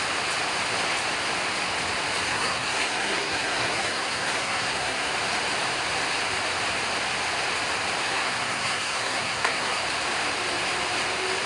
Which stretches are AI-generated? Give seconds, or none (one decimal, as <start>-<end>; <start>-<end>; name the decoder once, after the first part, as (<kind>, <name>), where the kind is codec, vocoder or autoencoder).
2.3-5.1 (codec, SNAC); 8.0-9.8